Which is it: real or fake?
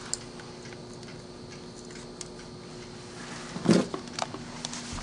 real